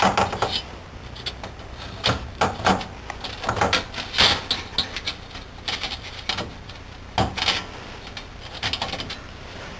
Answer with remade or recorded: recorded